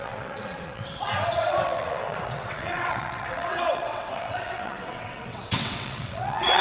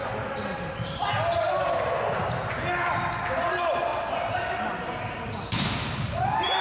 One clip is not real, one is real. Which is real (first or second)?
second